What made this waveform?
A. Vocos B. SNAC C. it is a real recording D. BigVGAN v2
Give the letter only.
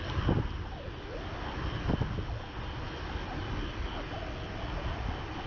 C